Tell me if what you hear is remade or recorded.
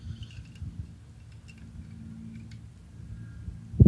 recorded